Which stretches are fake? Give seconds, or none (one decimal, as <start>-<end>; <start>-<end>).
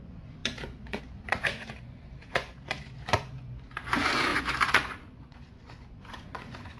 0.0-6.8